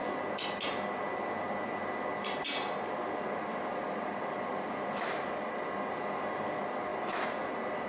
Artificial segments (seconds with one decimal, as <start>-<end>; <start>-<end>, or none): none